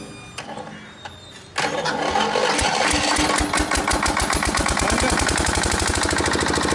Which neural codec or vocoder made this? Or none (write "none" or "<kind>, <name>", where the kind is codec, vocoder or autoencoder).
none